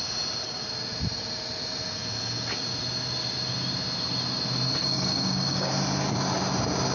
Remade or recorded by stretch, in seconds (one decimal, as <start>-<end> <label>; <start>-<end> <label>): 0.0-4.8 recorded; 4.8-5.7 remade; 5.7-6.9 recorded